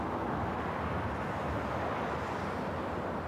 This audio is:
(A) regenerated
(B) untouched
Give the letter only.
B